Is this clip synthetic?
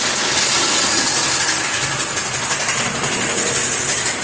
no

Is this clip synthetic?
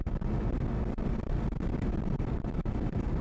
no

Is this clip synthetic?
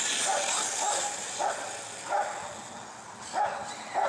no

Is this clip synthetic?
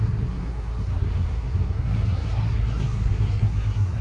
yes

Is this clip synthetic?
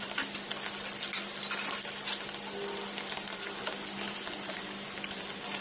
no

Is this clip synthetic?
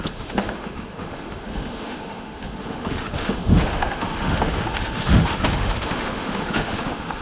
yes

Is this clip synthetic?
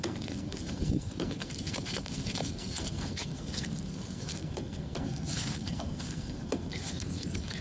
yes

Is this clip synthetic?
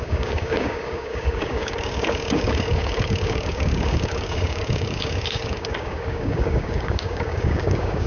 yes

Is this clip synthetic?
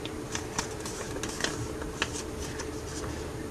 no